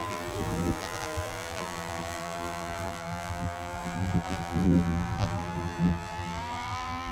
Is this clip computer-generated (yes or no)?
yes